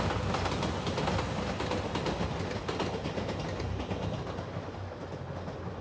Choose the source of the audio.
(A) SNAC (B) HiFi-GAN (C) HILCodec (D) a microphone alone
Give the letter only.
D